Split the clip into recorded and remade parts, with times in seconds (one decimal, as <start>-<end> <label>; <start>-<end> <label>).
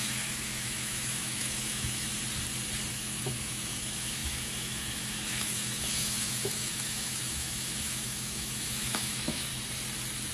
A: 0.0-2.1 remade; 2.1-2.9 recorded; 2.9-9.5 remade; 9.5-10.3 recorded